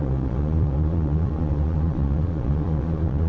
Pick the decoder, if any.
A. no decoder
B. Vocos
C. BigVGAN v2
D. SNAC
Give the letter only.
B